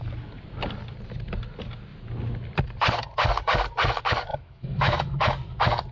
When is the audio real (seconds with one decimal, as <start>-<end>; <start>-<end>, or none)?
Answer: 0.0-4.3; 5.3-5.9